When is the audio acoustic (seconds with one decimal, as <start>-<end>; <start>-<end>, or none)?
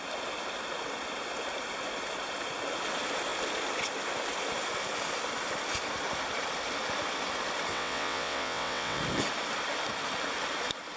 0.0-7.7; 9.0-11.0